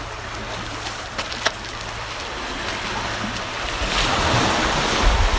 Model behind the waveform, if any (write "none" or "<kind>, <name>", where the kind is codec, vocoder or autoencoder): none